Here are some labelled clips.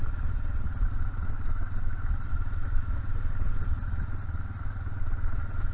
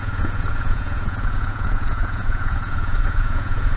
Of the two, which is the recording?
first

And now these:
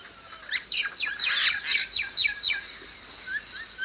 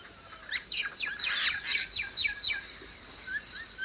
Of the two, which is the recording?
first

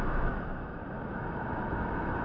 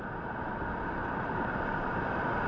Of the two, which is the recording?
second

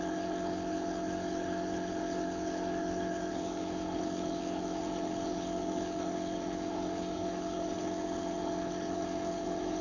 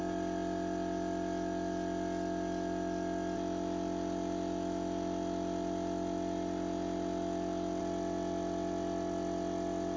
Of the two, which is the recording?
second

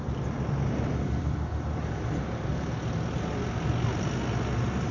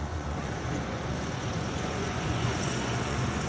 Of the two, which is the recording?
first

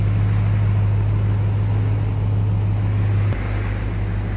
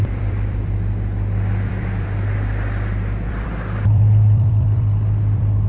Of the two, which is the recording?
first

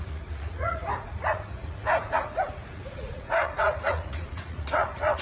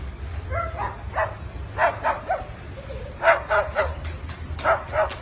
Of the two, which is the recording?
second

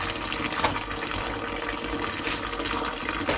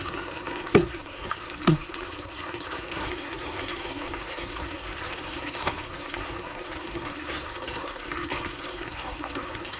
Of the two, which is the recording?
first